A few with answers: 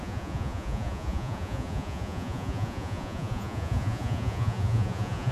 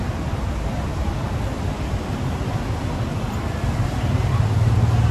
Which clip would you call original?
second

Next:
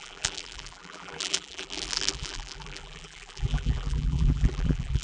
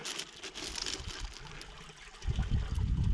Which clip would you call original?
second